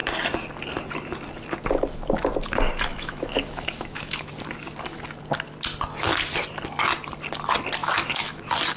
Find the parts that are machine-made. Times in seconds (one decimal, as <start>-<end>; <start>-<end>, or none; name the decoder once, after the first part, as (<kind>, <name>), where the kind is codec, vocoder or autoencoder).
2.9-4.3 (autoencoder, DAC-VAE); 7.8-8.4